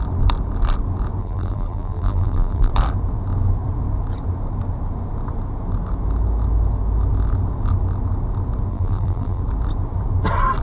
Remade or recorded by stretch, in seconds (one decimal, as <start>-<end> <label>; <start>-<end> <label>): 0.0-1.2 recorded; 1.2-2.7 remade; 2.7-8.7 recorded; 8.7-9.4 remade; 9.4-10.6 recorded